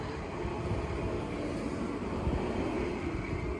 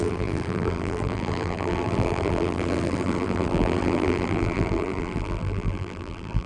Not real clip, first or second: second